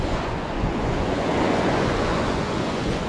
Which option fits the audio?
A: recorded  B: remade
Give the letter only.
B